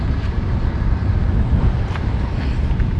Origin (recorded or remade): recorded